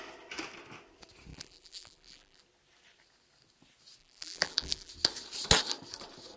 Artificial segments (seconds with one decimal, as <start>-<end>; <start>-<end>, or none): 1.3-2.4; 4.0-4.9